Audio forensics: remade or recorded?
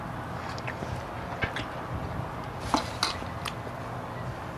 recorded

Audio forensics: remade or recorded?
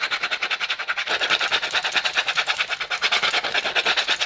recorded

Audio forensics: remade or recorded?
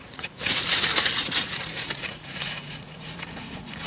remade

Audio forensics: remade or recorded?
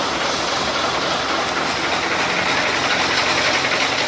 recorded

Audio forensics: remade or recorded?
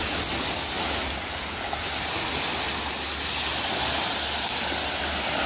recorded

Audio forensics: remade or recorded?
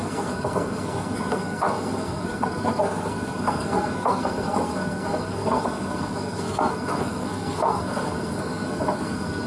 remade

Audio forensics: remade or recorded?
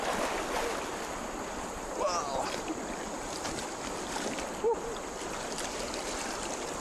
recorded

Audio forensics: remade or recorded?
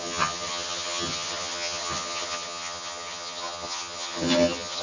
remade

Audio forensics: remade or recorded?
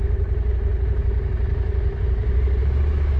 recorded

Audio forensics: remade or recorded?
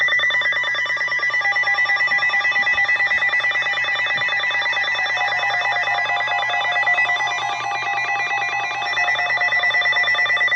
recorded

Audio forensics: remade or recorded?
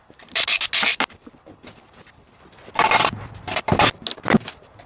recorded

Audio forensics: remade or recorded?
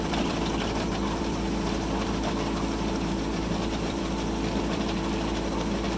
remade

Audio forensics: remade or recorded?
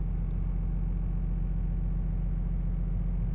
recorded